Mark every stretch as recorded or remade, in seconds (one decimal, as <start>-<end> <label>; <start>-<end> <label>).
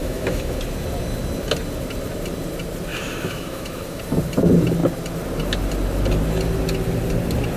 0.0-0.6 remade; 0.6-2.9 recorded; 2.9-4.0 remade; 4.0-7.6 recorded